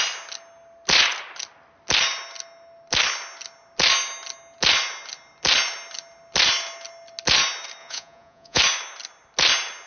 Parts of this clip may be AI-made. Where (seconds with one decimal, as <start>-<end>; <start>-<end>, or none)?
7.8-8.6